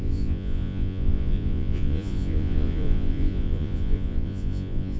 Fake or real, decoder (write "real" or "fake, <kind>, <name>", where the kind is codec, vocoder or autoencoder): fake, vocoder, Vocos